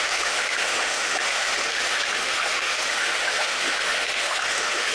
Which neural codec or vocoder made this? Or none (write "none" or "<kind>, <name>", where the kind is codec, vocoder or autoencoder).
autoencoder, DAC-VAE